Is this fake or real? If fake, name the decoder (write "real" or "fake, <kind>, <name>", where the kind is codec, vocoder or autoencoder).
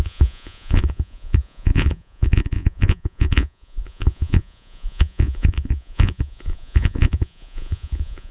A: fake, vocoder, Vocos